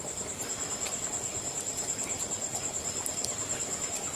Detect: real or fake real